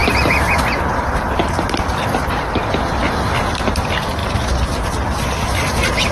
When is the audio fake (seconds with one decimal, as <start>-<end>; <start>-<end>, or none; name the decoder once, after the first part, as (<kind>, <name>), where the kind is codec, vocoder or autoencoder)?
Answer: 0.8-4.2 (vocoder, BigVGAN v2); 5.4-6.1